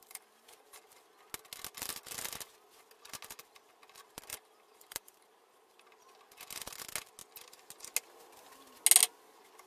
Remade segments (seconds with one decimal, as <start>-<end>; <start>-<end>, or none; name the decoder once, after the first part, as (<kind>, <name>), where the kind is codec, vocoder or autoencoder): 0.0-0.8 (vocoder, BigVGAN v2); 4.3-5.8